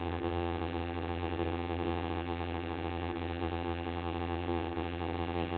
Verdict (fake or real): fake